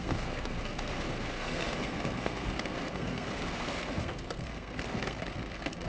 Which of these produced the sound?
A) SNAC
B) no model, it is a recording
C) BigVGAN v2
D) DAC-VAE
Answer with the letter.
A